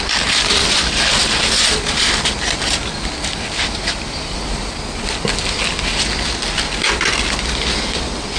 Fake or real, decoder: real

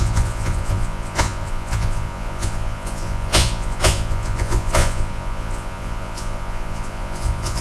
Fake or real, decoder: fake, vocoder, Vocos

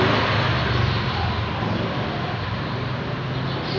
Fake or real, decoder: real